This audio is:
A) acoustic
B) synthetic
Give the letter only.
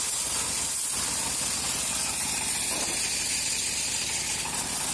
A